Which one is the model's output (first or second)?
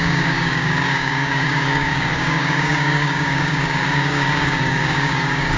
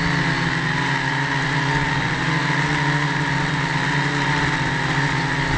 first